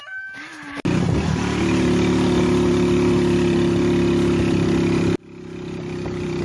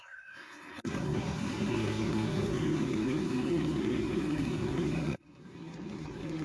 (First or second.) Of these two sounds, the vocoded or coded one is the second